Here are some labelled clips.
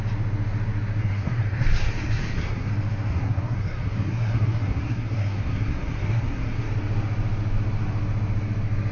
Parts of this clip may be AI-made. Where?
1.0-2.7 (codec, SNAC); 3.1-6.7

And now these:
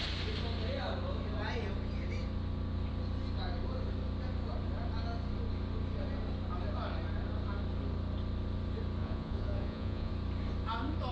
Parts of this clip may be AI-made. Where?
9.0-10.1 (vocoder, Vocos)

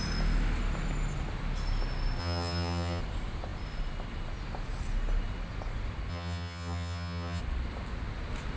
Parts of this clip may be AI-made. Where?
2.2-3.0 (vocoder, HiFi-GAN); 6.1-7.4

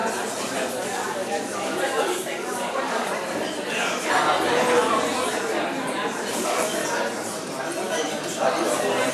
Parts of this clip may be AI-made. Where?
0.9-3.1 (codec, DAC); 6.3-6.8

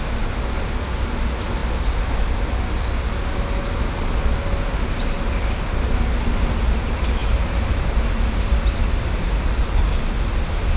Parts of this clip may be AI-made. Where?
none

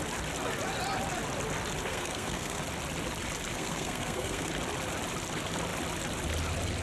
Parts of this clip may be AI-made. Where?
1.9-2.6 (codec, SNAC); 3.5-4.5

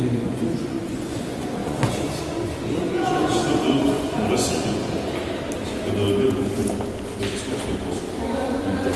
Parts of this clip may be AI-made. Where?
0.0-4.8 (vocoder, Vocos); 8.5-9.0

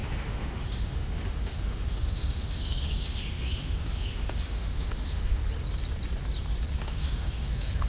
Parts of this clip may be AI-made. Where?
0.0-5.4 (autoencoder, DAC-VAE); 6.8-7.9